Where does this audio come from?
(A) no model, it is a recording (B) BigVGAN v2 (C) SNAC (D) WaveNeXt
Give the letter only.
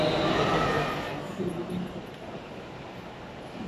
A